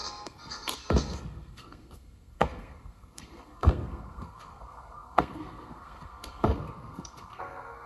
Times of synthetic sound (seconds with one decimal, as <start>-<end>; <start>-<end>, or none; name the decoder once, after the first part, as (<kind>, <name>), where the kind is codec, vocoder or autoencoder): 0.0-7.9 (codec, SNAC)